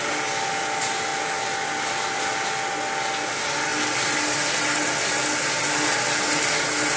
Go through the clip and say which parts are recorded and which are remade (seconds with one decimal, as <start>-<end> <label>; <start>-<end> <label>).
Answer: 0.0-7.0 recorded